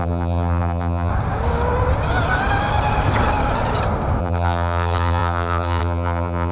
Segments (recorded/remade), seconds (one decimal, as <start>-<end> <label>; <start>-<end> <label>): 0.0-1.1 remade; 1.1-4.2 recorded; 4.2-6.5 remade